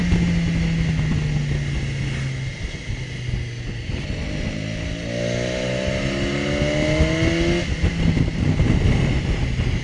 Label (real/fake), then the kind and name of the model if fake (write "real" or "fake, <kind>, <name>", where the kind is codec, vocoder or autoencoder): real